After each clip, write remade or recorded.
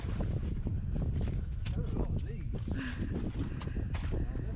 recorded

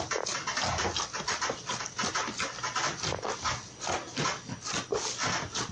recorded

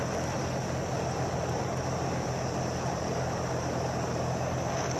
recorded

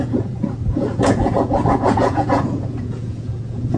remade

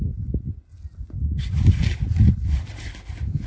recorded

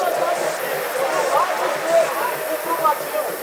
recorded